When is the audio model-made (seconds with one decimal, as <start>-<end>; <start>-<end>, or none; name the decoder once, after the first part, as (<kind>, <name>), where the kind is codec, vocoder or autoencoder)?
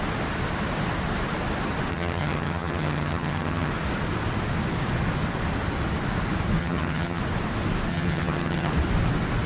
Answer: 1.9-3.7 (vocoder, HiFi-GAN); 6.6-7.2; 7.9-8.7